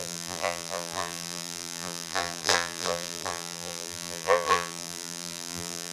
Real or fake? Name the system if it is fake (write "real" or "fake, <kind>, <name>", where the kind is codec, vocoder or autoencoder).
fake, vocoder, BigVGAN v2